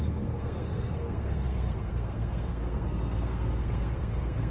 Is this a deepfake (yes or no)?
yes